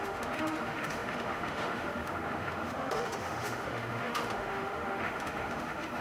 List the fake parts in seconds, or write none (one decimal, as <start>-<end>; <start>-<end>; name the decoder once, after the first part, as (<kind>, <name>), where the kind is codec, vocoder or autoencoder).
0.0-6.0 (autoencoder, DAC-VAE)